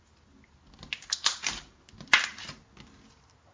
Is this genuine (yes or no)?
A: yes